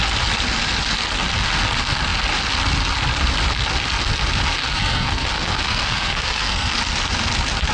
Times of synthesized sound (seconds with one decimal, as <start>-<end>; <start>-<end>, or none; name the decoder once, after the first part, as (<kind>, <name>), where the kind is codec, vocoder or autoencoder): 4.6-6.7 (codec, SNAC)